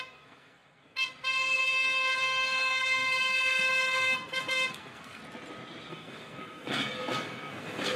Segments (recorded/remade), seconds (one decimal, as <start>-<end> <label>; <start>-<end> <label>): 0.0-5.2 remade; 5.2-5.9 recorded; 5.9-8.0 remade